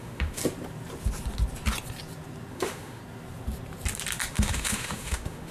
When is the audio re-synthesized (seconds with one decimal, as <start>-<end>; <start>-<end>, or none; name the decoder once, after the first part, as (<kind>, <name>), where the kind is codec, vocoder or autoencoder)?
0.0-0.4 (autoencoder, DAC-VAE); 2.5-3.0; 4.3-5.5

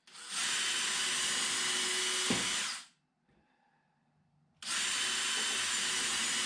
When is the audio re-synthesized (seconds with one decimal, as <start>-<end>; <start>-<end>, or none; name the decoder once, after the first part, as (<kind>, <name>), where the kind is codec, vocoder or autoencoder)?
none

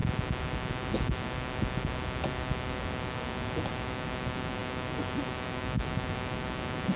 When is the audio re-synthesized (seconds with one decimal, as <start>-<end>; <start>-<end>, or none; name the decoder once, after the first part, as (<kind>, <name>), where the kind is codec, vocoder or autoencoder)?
3.7-7.0 (autoencoder, DAC-VAE)

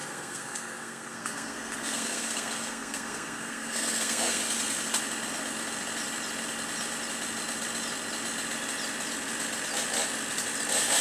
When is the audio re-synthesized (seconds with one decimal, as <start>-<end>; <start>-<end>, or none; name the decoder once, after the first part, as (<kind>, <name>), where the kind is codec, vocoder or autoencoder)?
0.0-4.4 (codec, SNAC)